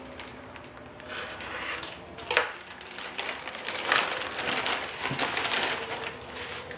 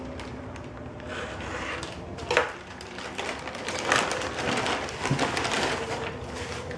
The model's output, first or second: second